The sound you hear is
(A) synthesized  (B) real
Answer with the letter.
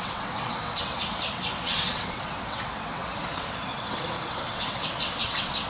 A